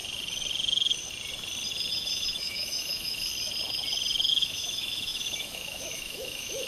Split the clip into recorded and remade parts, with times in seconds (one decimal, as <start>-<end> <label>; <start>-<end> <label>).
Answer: 0.0-1.9 recorded; 1.9-3.3 remade; 3.3-4.3 recorded; 4.3-6.7 remade